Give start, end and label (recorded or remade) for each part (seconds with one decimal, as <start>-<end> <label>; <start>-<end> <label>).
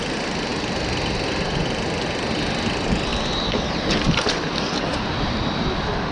0.0-6.1 recorded